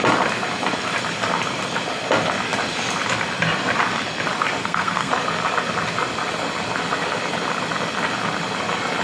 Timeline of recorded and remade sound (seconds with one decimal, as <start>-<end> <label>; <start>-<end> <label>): 0.0-4.6 recorded; 4.6-5.1 remade; 5.1-9.0 recorded